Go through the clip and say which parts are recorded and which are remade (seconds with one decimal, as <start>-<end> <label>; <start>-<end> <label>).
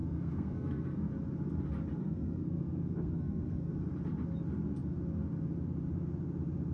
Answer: 0.0-1.1 remade; 1.1-2.0 recorded; 2.0-3.7 remade; 3.7-6.7 recorded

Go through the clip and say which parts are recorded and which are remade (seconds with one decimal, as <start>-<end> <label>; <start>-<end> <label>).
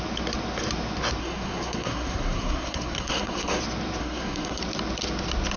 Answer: 0.0-1.2 recorded; 1.2-3.6 remade; 3.6-4.0 recorded; 4.0-4.6 remade; 4.6-5.6 recorded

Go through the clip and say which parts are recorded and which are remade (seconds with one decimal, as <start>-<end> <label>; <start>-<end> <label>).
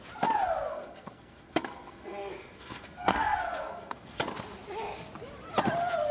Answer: 0.0-0.7 recorded; 0.7-4.2 remade; 4.2-6.1 recorded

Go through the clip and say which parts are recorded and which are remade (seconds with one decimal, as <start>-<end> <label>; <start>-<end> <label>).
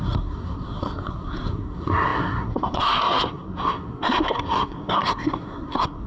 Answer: 0.0-6.1 remade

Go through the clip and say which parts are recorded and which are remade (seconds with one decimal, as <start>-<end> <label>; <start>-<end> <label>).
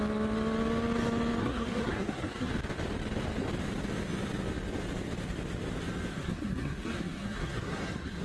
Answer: 0.0-1.4 recorded; 1.4-2.5 remade; 2.5-6.1 recorded; 6.1-8.2 remade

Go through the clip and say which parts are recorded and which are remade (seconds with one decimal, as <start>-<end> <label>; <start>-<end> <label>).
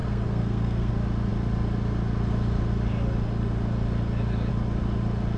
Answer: 0.0-0.9 remade; 0.9-5.4 recorded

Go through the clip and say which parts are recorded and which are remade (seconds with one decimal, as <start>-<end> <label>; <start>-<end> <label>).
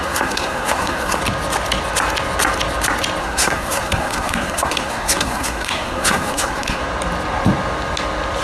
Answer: 0.0-1.2 remade; 1.2-3.2 recorded; 3.2-6.8 remade; 6.8-8.4 recorded